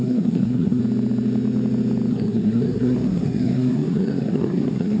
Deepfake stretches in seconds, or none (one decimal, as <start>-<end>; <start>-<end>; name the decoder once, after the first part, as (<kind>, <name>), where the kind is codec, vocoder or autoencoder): 0.0-0.8 (codec, SNAC); 2.1-5.0